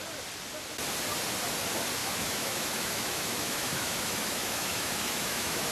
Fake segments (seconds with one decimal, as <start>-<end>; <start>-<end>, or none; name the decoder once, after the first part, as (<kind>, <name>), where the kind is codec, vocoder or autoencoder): 2.0-5.7 (autoencoder, DAC-VAE)

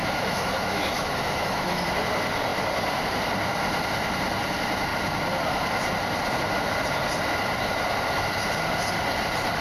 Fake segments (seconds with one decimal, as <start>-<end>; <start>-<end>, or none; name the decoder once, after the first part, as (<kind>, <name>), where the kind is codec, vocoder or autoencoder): 0.0-1.9 (autoencoder, DAC-VAE)